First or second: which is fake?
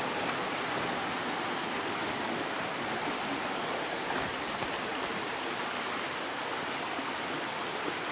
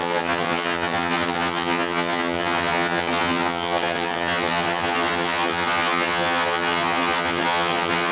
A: second